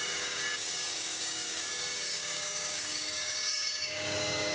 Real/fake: fake